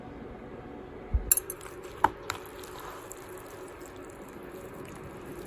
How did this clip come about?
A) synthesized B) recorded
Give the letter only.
B